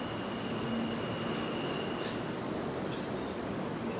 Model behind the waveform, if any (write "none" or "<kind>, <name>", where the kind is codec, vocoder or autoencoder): none